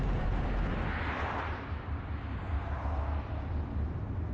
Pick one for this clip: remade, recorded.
recorded